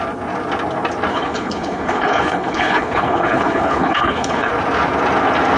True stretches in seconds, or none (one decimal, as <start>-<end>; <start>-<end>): 0.0-1.1; 4.5-5.6